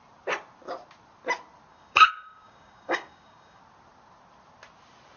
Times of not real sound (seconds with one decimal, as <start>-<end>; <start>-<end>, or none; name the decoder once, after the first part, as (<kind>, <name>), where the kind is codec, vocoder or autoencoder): 1.7-3.6 (codec, DAC)